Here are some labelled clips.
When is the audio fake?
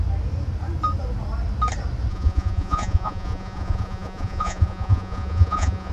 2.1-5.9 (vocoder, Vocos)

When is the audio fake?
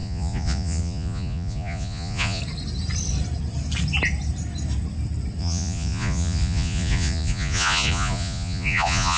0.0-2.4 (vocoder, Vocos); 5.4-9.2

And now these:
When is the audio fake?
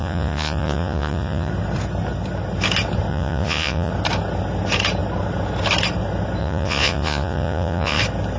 0.0-1.5 (vocoder, Vocos); 3.1-3.9; 6.4-8.0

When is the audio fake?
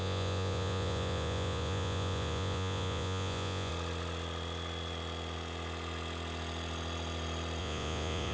0.0-3.7 (vocoder, Vocos); 7.6-8.3